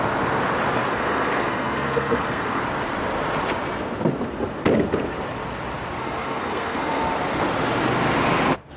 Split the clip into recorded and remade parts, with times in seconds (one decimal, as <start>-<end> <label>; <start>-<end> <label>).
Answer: 0.0-0.9 recorded; 0.9-2.6 remade; 2.6-6.0 recorded; 6.0-7.0 remade; 7.0-8.8 recorded